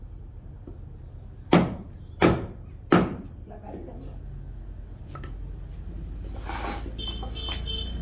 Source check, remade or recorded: recorded